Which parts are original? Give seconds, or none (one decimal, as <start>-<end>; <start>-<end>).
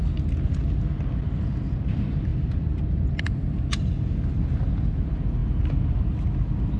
0.0-6.8